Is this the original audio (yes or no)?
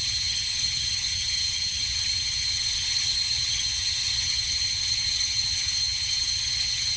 no